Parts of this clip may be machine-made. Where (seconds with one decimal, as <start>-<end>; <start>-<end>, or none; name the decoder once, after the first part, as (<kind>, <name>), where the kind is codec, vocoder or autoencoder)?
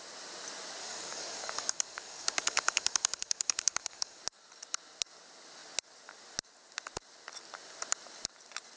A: 0.8-4.2 (codec, DAC)